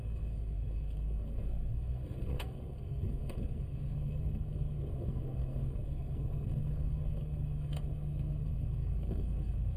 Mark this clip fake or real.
fake